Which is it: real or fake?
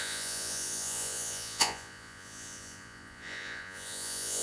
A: fake